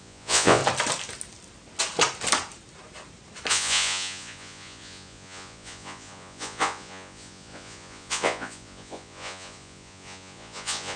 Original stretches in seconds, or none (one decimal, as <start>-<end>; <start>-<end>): 0.6-3.5